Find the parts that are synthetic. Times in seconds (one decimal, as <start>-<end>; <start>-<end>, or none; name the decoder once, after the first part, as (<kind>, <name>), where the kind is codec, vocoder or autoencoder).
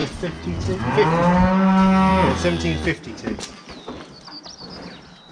none